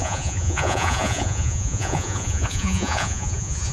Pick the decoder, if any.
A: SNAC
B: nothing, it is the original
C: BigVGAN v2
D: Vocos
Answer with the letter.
D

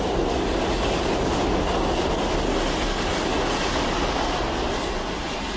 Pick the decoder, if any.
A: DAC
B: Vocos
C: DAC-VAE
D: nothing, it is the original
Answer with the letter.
D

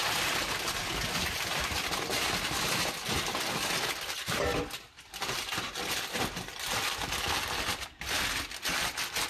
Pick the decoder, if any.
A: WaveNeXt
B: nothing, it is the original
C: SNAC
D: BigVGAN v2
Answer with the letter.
B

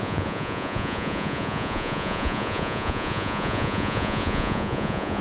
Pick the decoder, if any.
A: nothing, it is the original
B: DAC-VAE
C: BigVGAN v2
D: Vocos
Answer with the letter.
D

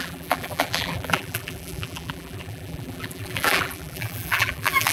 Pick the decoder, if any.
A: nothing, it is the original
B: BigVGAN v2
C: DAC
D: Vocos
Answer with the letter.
B